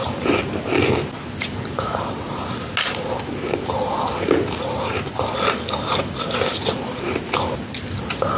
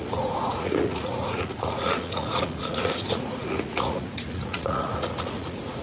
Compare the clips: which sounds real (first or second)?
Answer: first